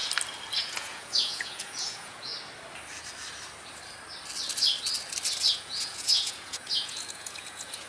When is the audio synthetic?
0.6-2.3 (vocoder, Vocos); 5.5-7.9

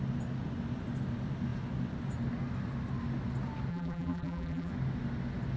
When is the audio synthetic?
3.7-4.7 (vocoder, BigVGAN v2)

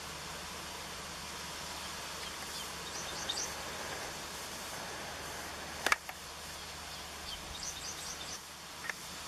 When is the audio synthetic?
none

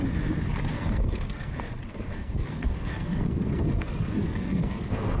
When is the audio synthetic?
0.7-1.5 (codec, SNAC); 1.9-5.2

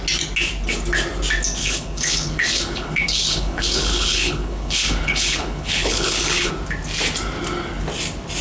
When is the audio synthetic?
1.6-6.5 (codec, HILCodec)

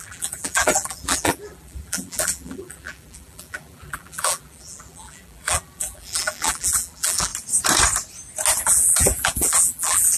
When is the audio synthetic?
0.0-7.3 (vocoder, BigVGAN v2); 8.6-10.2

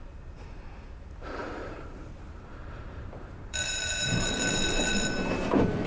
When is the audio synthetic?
1.4-4.9 (vocoder, BigVGAN v2)

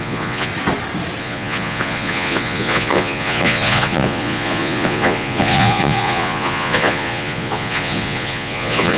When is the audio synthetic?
0.0-0.5 (vocoder, Vocos); 1.2-9.0